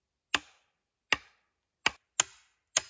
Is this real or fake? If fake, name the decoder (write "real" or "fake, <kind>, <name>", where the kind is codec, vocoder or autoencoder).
real